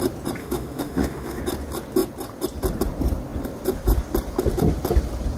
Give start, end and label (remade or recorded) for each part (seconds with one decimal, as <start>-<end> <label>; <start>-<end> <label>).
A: 0.0-0.4 recorded; 0.4-1.4 remade; 1.4-5.4 recorded